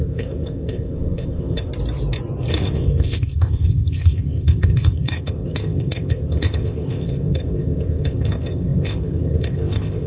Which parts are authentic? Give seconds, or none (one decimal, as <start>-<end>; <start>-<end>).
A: 1.7-2.5